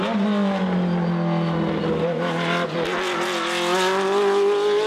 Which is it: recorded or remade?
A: recorded